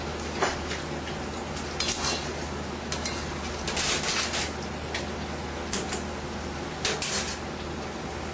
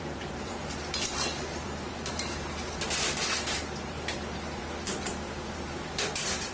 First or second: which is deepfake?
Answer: second